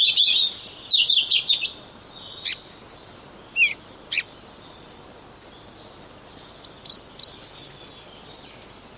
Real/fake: real